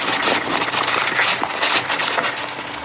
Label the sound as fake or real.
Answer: real